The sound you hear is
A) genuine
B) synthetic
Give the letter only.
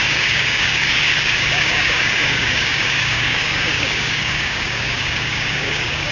B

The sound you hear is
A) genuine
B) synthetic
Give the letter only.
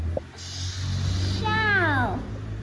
A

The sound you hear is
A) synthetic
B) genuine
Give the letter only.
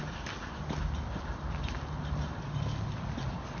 B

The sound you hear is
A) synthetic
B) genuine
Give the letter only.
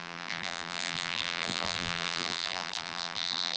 A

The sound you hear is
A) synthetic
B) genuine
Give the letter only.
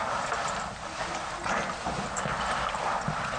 B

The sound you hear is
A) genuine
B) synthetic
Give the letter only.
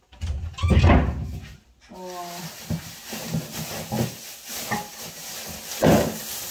A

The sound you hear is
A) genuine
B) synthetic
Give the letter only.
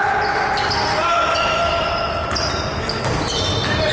A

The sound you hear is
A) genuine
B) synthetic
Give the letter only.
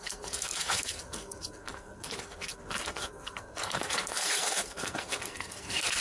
B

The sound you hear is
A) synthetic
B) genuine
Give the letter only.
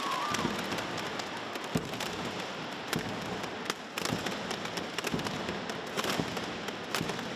B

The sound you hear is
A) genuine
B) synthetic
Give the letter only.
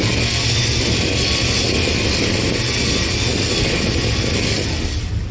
A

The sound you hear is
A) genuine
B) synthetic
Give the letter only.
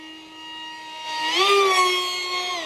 A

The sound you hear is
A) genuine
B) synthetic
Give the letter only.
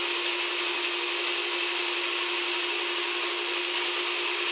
A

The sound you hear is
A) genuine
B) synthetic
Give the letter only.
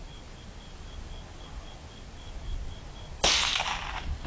A